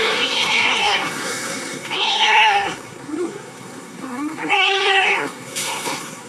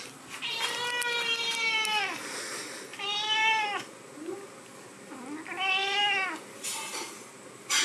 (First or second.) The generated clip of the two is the first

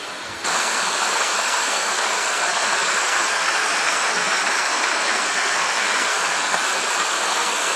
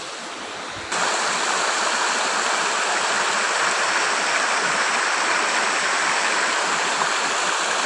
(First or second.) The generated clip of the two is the first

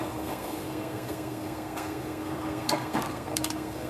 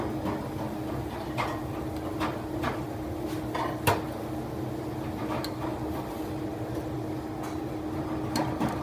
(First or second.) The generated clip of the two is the first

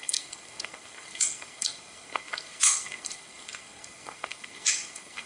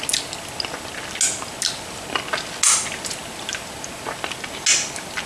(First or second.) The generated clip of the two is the first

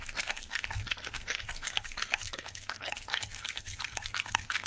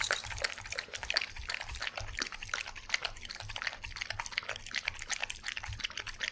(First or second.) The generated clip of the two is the first